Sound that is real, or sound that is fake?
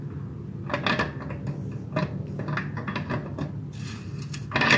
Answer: real